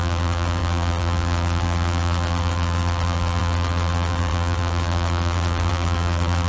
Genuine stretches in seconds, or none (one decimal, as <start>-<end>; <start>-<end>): none